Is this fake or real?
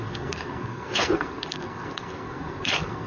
fake